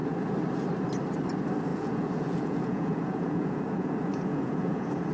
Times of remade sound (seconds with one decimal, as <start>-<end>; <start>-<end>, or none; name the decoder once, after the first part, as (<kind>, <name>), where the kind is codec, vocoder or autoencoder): 1.7-5.1 (vocoder, Vocos)